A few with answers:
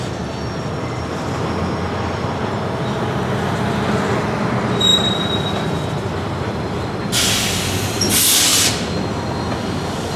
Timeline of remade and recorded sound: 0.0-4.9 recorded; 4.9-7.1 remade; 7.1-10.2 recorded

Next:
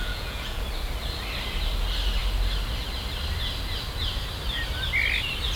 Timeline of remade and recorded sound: 0.0-0.6 remade; 0.6-5.6 recorded